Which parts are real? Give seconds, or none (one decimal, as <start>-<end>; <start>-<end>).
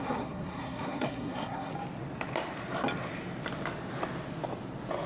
1.7-5.1